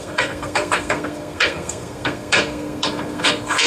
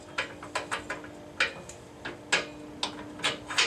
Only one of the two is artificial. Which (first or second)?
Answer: first